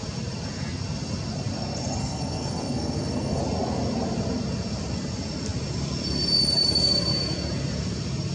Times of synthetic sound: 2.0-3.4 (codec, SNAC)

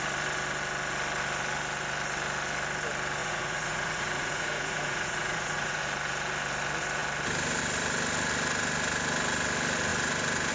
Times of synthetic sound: 3.2-5.8 (vocoder, Vocos)